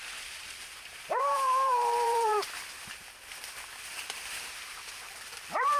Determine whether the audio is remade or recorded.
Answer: remade